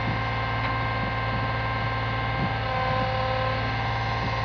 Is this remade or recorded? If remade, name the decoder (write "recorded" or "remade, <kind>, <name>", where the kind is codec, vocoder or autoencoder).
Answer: recorded